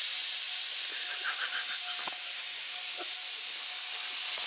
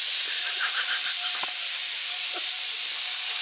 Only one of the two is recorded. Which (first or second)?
first